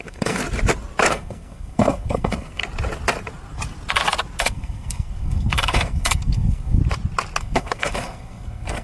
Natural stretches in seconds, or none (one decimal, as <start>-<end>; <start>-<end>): 0.4-1.1; 2.6-4.4; 6.8-7.4